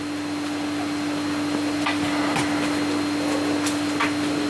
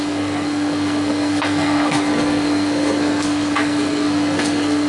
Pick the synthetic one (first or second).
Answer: second